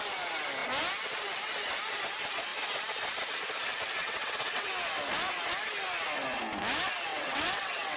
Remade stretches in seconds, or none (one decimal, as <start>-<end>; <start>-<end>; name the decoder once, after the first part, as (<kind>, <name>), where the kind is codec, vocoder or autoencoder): 4.0-4.7 (vocoder, WaveNeXt); 7.1-8.0